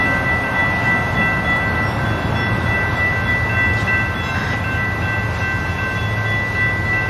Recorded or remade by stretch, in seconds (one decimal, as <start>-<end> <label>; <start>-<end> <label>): 0.0-7.1 recorded